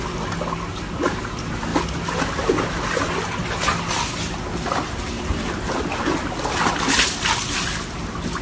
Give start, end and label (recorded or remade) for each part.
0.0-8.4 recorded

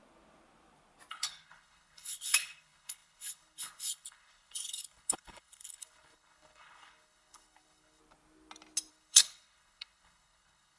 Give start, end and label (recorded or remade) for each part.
0.0-1.1 recorded; 1.1-8.0 remade; 8.0-8.9 recorded; 8.9-10.8 remade

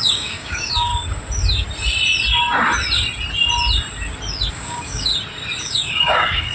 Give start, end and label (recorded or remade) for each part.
0.0-0.9 remade; 0.9-4.5 recorded; 4.5-5.1 remade; 5.1-5.6 recorded; 5.6-6.5 remade